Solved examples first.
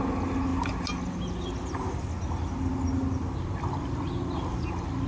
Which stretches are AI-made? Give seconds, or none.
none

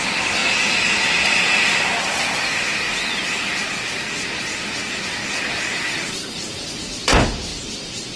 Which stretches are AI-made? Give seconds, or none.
none

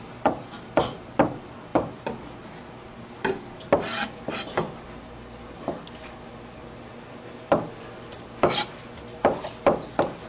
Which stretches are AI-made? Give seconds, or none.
none

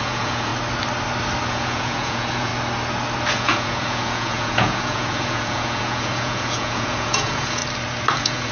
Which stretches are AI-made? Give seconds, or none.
0.0-0.5 (vocoder, Vocos); 1.5-2.5; 3.3-7.6; 8.1-8.5

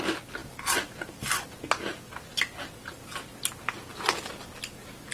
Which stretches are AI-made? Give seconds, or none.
none

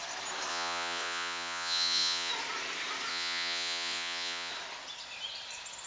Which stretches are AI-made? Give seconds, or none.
0.5-2.3 (vocoder, Vocos); 3.1-4.5

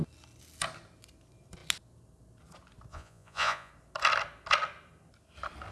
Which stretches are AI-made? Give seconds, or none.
2.9-3.7 (vocoder, Vocos)